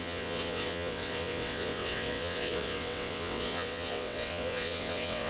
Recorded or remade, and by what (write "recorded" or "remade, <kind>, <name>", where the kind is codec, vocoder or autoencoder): remade, vocoder, WaveNeXt